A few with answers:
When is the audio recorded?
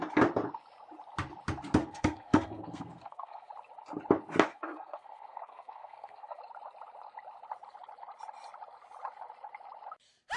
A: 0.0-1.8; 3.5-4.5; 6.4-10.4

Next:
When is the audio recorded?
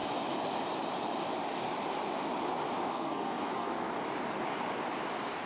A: 0.0-2.9; 3.9-5.5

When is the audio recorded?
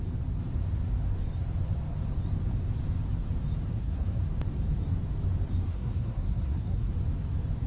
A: 0.0-3.7; 4.2-5.7; 6.9-7.7